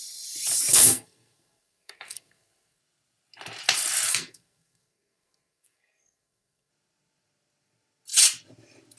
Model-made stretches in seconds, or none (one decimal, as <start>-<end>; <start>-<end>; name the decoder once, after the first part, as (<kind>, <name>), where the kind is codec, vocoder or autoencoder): 0.7-2.8 (codec, SNAC); 4.1-6.7